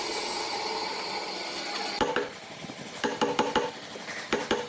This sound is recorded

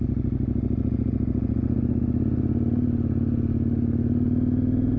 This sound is recorded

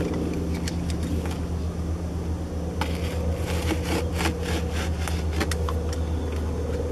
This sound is recorded